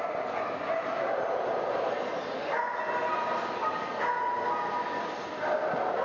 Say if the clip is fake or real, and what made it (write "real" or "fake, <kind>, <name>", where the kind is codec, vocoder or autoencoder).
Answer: real